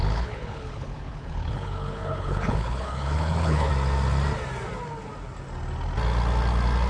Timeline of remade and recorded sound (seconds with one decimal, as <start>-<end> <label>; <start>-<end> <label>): 0.0-3.7 remade; 3.7-6.9 recorded